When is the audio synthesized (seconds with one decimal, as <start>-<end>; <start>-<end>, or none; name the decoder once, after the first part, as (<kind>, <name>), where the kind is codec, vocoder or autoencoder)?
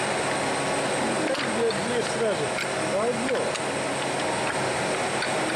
none